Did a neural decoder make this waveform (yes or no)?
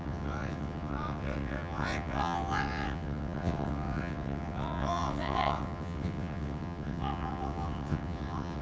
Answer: yes